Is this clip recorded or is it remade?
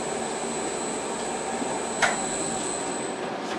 recorded